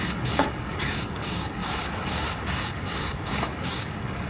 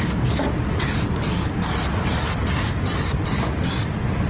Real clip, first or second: second